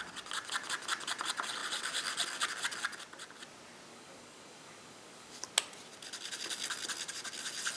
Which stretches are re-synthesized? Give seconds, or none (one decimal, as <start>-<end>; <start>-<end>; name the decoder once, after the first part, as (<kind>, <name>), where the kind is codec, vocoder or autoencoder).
3.9-5.5 (codec, DAC)